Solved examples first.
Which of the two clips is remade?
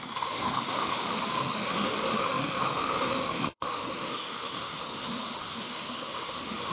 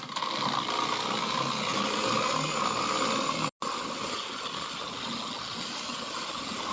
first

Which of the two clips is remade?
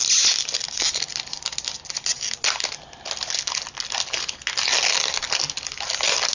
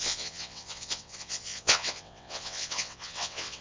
second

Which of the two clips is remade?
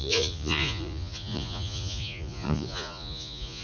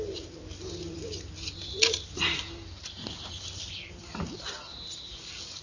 first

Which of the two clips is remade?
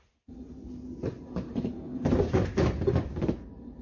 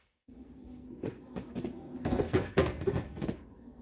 second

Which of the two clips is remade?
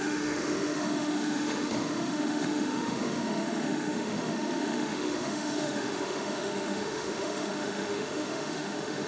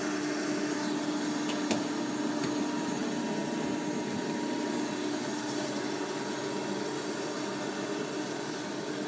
first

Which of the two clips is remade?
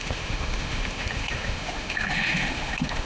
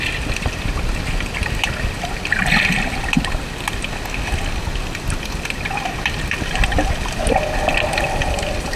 first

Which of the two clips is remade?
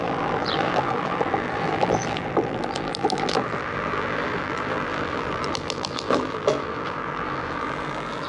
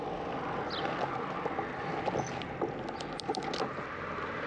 first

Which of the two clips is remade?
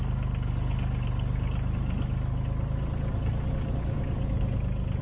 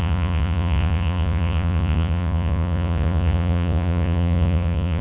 second